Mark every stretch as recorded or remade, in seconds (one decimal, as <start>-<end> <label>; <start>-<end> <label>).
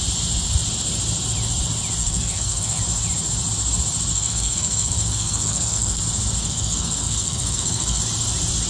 0.0-2.0 recorded; 2.0-2.8 remade; 2.8-4.1 recorded; 4.1-6.0 remade; 6.0-6.4 recorded; 6.4-8.0 remade; 8.0-8.7 recorded